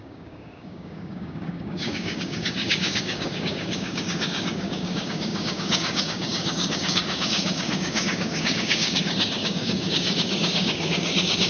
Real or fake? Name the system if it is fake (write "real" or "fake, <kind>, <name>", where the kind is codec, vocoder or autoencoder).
fake, codec, DAC